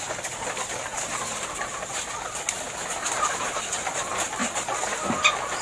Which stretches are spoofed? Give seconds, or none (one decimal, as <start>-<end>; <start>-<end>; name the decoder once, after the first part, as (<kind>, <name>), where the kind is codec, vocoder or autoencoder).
none